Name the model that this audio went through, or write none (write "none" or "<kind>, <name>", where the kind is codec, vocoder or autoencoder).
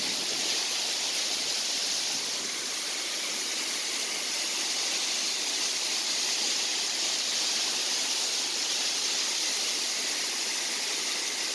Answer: none